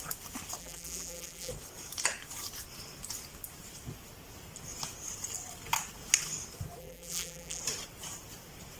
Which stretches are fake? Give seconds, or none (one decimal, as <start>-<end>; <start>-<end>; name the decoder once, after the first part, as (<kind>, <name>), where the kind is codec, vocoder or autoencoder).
0.6-1.5 (vocoder, BigVGAN v2); 6.8-7.6